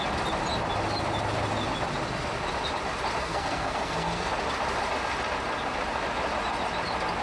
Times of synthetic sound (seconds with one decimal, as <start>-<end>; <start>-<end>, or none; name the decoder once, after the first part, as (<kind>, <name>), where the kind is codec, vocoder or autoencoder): 3.2-4.3 (codec, SNAC)